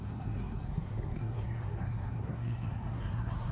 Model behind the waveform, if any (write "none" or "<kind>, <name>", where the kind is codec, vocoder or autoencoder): codec, SNAC